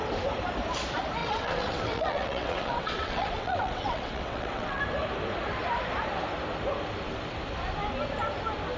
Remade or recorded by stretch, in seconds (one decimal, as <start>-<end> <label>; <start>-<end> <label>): 0.0-1.2 recorded; 1.2-4.8 remade; 4.8-8.8 recorded